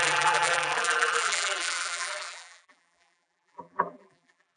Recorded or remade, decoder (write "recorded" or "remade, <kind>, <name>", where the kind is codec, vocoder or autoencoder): remade, vocoder, BigVGAN v2